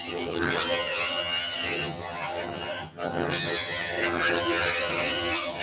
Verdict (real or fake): fake